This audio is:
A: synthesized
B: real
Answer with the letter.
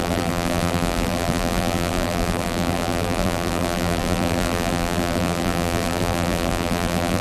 A